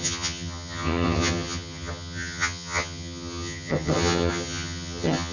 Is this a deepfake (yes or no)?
yes